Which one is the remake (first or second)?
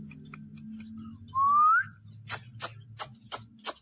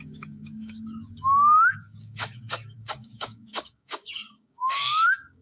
second